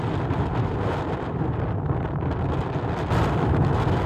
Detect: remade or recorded recorded